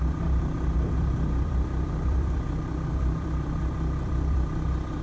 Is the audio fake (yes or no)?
yes